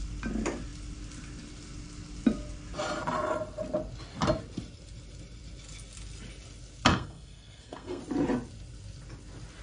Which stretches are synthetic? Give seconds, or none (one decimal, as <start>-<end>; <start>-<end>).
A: 6.9-8.0